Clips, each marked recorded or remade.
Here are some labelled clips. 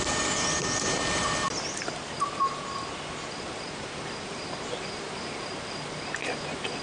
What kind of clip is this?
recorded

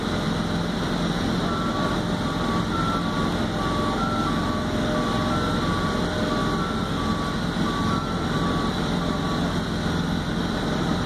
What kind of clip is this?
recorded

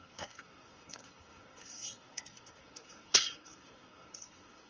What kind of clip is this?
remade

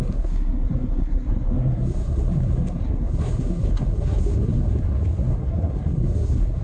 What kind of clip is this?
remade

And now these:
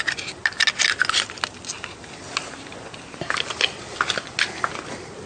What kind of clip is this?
recorded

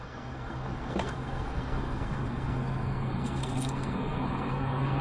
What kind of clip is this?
remade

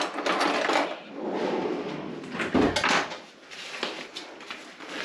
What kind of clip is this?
recorded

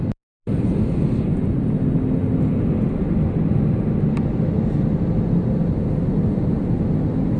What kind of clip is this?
recorded